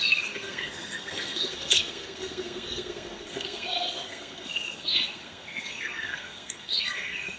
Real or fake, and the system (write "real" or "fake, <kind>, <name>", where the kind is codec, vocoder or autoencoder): fake, codec, SNAC